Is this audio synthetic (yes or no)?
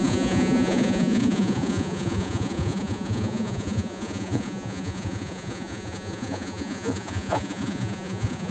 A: yes